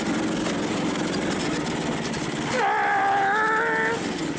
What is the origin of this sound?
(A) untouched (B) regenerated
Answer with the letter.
A